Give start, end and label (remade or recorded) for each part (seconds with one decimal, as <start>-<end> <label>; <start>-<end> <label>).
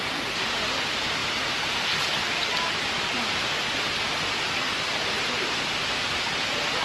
0.0-6.8 recorded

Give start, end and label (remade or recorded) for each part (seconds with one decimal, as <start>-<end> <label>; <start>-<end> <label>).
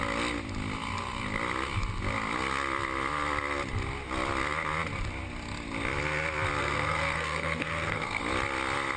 0.0-6.6 recorded; 6.6-8.2 remade; 8.2-9.0 recorded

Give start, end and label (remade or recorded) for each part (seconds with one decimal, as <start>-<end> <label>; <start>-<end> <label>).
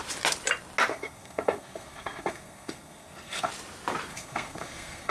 0.0-0.9 recorded; 0.9-3.5 remade; 3.5-4.1 recorded; 4.1-5.1 remade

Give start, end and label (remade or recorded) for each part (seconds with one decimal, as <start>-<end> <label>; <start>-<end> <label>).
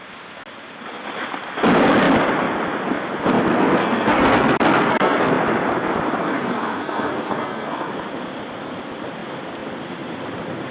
0.0-3.5 recorded; 3.5-5.3 remade; 5.3-6.2 recorded; 6.2-7.9 remade; 7.9-10.7 recorded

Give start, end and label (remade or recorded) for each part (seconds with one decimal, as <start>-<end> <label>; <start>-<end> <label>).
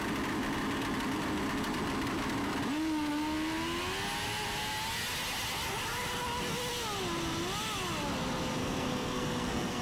0.0-8.6 recorded; 8.6-9.8 remade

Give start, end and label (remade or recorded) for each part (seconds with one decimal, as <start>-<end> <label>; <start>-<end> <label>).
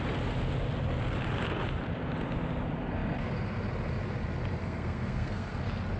0.0-4.6 recorded; 4.6-5.6 remade; 5.6-6.0 recorded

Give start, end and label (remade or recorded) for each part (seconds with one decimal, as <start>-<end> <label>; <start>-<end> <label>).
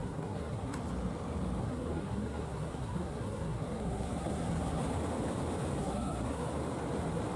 0.0-0.8 remade; 0.8-1.6 recorded; 1.6-4.8 remade; 4.8-5.8 recorded; 5.8-6.5 remade; 6.5-7.4 recorded